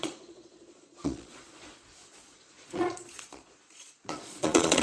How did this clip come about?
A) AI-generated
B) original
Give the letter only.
A